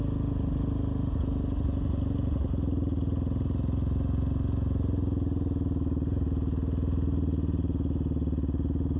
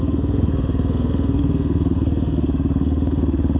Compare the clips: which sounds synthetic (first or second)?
second